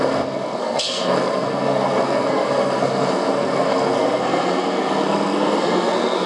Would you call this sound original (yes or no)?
no